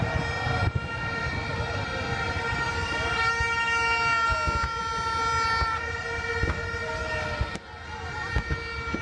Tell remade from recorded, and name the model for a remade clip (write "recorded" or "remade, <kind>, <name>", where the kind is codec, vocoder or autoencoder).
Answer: recorded